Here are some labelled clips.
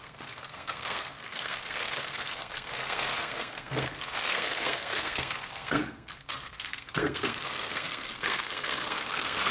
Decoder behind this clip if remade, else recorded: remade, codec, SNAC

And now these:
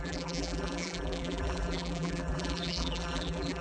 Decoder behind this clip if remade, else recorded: remade, vocoder, BigVGAN v2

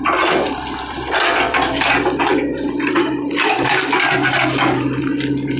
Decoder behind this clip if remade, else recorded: recorded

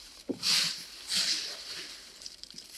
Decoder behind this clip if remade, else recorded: remade, vocoder, BigVGAN v2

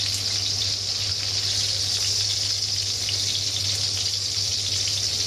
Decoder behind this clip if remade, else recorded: recorded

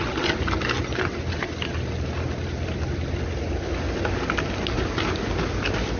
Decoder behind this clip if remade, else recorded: recorded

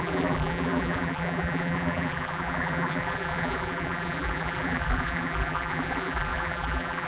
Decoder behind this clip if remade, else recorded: remade, vocoder, BigVGAN v2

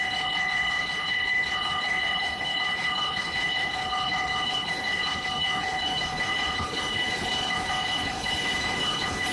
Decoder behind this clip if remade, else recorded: remade, codec, HILCodec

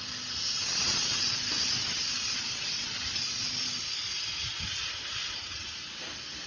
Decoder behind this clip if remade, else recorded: recorded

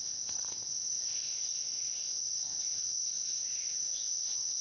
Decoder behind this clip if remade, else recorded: remade, codec, ZipCodec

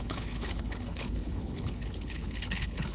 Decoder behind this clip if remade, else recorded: remade, codec, HILCodec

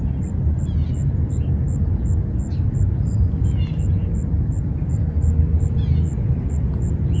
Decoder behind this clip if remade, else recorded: recorded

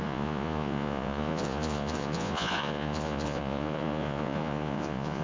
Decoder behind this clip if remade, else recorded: remade, vocoder, Vocos